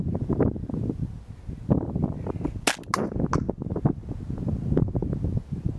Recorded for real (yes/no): yes